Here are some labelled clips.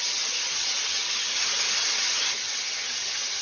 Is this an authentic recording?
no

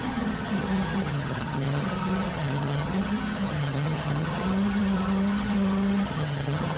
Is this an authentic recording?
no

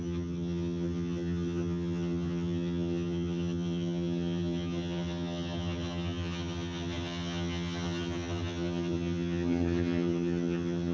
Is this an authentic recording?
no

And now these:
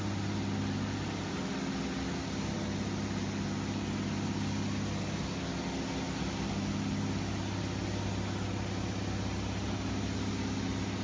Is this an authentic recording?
yes